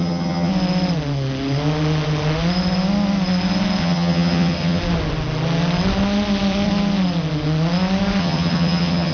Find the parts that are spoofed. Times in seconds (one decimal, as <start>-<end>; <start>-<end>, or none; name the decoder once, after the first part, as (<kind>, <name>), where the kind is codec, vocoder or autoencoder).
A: 0.0-0.5 (vocoder, HiFi-GAN); 3.8-4.8; 8.2-9.1